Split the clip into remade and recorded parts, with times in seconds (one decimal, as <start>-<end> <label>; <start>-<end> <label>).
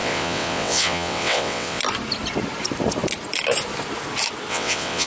0.0-1.8 remade; 1.8-4.5 recorded; 4.5-5.1 remade